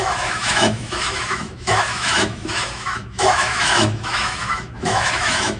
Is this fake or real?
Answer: fake